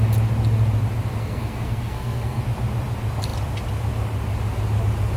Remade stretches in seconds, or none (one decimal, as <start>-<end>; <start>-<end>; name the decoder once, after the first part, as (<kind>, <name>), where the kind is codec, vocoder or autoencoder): 1.2-2.4 (codec, SNAC)

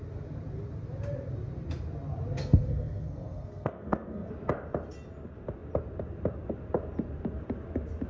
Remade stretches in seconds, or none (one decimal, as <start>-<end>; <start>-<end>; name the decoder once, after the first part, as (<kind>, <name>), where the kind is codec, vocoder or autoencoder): 2.4-4.3 (codec, SNAC)

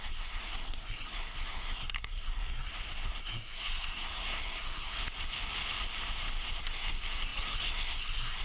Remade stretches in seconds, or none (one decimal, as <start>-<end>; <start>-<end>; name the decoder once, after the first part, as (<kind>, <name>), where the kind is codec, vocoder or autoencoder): 0.0-2.7 (codec, SNAC); 3.2-5.0; 6.6-8.4

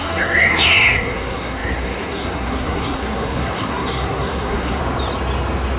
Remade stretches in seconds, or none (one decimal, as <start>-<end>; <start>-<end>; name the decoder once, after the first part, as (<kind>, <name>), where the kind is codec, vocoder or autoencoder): 0.0-4.8 (codec, SNAC)

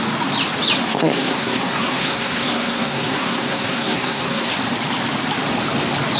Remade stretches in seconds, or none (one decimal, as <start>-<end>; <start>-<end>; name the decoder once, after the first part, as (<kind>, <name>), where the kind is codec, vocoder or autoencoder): 0.9-4.5 (codec, SNAC)

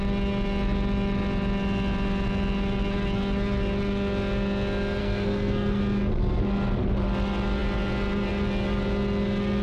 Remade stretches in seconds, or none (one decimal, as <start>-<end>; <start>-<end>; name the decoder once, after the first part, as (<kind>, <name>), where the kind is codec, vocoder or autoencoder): 5.0-5.8 (codec, SNAC)